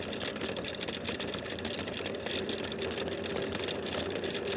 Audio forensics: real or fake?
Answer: real